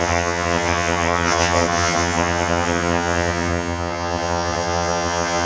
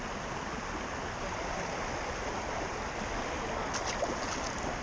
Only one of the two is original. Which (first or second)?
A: second